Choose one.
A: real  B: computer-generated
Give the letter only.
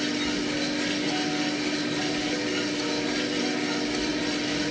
A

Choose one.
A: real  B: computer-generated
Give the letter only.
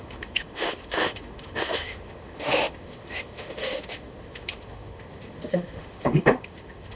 B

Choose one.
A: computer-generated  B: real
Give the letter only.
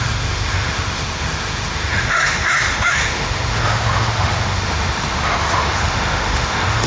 A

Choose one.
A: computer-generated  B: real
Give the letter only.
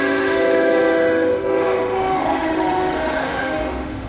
A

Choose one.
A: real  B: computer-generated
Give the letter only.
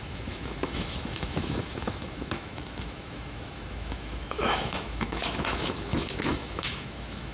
B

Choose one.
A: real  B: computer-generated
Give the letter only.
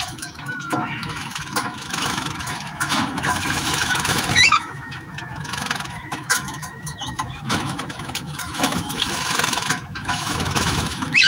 B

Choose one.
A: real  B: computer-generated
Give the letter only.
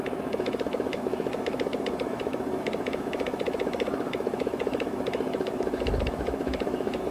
B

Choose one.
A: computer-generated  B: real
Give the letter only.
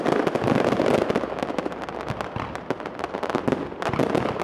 B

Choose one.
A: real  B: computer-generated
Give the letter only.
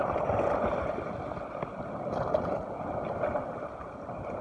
A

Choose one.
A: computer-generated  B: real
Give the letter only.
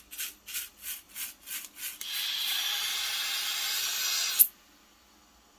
B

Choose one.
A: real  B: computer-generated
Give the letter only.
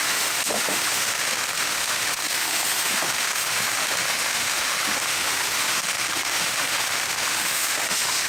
B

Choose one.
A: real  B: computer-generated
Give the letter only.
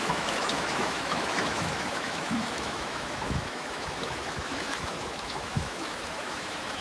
B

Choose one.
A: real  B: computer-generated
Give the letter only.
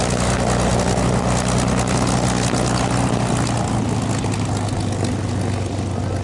A